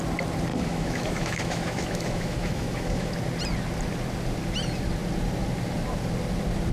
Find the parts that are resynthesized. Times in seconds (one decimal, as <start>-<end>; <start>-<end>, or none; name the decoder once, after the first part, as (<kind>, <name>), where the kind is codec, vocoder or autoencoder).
0.5-3.1 (autoencoder, DAC-VAE)

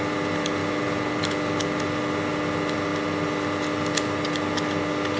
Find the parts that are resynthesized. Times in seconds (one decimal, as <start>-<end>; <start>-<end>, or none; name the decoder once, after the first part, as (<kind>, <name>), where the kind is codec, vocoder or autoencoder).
none